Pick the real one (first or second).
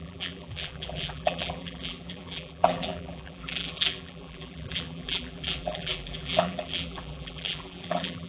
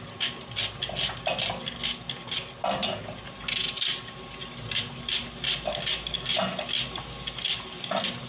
second